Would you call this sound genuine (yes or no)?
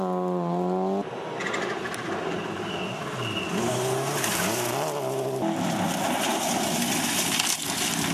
yes